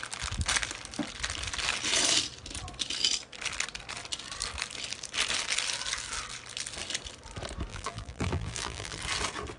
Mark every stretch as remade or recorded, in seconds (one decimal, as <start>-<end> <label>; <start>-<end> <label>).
0.0-7.7 recorded; 7.7-9.0 remade; 9.0-9.6 recorded